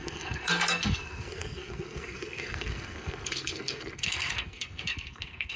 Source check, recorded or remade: remade